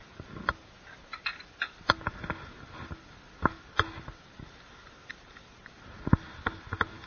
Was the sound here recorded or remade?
recorded